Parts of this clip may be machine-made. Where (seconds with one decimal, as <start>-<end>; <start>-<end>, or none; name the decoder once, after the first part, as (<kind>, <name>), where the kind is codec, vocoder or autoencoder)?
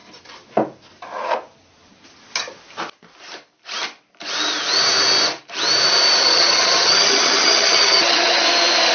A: 6.2-8.4 (vocoder, HiFi-GAN)